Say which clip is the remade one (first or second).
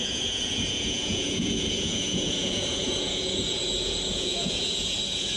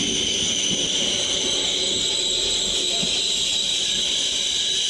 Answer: first